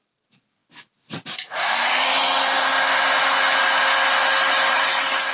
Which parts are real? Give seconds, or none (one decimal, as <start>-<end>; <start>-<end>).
0.0-5.3